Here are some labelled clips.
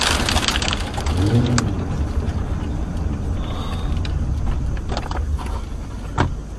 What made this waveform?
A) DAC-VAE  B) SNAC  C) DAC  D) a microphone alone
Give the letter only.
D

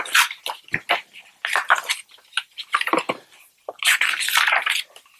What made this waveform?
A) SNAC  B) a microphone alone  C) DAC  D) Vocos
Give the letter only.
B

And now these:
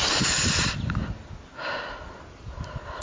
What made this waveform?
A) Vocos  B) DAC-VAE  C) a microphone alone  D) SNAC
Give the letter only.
C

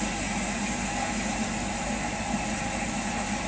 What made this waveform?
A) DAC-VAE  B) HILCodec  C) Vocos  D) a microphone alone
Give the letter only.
D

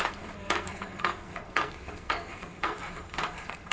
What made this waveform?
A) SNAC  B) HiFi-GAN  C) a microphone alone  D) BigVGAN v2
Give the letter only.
A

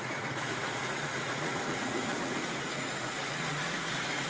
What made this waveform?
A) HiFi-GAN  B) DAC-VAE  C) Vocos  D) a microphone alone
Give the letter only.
C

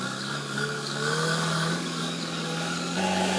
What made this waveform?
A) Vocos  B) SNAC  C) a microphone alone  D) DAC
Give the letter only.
D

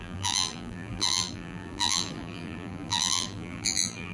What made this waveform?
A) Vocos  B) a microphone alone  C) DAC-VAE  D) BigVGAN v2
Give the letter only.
D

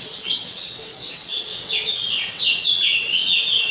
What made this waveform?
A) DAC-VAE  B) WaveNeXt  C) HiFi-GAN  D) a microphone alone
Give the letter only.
B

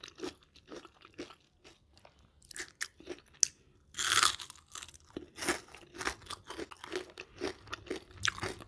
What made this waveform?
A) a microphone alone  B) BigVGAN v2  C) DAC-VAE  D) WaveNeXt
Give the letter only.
A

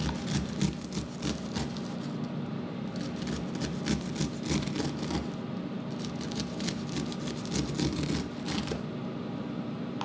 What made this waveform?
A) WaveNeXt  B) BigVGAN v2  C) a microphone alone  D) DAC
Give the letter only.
C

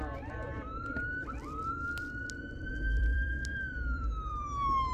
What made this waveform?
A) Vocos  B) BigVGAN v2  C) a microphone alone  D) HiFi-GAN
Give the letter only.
B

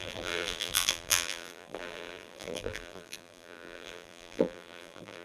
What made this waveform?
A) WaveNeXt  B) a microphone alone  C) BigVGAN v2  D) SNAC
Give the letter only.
C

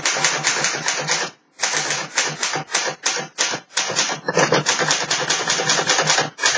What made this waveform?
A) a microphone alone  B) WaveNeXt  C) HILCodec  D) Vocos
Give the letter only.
A